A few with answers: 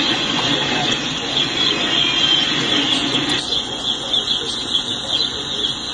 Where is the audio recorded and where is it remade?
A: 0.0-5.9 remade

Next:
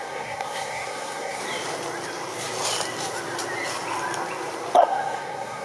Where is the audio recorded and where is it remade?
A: 0.0-1.4 remade; 1.4-4.8 recorded; 4.8-5.6 remade